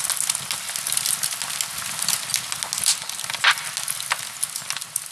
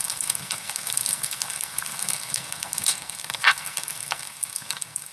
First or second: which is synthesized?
second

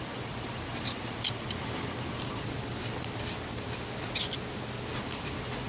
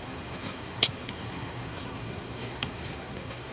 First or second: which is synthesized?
second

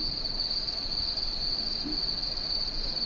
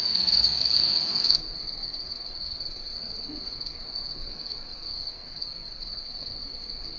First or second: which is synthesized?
second